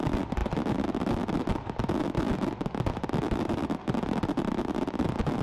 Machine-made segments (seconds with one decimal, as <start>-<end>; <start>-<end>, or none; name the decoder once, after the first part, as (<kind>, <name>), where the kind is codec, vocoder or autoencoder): none